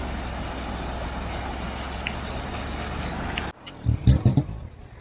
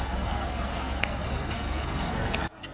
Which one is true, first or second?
first